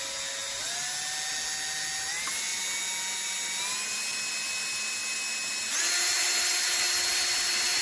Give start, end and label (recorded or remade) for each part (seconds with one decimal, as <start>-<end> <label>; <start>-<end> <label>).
0.0-7.8 recorded

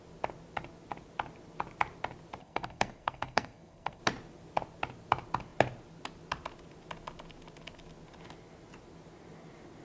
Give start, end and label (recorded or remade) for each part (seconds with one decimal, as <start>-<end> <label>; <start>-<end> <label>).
0.0-2.4 recorded; 2.4-4.0 remade; 4.0-9.8 recorded

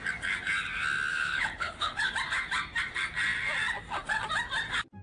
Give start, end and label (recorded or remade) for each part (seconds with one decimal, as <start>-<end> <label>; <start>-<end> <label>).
0.0-1.1 recorded; 1.1-2.1 remade; 2.1-5.0 recorded

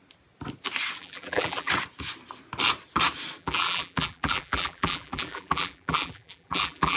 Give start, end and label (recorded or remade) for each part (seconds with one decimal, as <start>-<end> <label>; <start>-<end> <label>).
0.0-1.0 recorded; 1.0-1.7 remade; 1.7-3.4 recorded; 3.4-7.0 remade

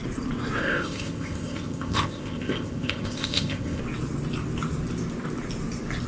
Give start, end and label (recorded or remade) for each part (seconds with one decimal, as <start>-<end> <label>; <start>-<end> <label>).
0.0-0.6 recorded; 0.6-3.8 remade; 3.8-6.1 recorded

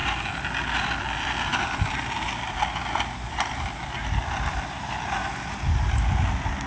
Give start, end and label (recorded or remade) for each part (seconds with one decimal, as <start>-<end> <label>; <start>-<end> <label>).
0.0-6.7 recorded

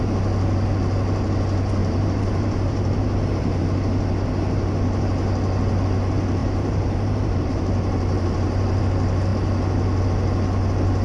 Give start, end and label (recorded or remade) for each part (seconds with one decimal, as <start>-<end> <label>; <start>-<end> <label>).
0.0-1.8 recorded; 1.8-3.8 remade; 3.8-6.4 recorded; 6.4-8.8 remade; 8.8-11.0 recorded